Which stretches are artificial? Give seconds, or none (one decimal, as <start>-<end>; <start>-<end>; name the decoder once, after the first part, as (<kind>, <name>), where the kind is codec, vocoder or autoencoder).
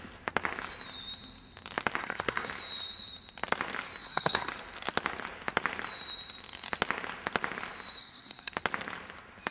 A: 2.0-2.5 (codec, SNAC); 4.0-4.5; 8.0-8.5